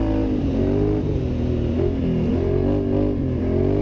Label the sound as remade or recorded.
recorded